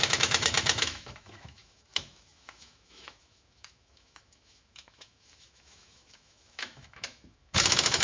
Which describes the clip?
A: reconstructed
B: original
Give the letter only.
A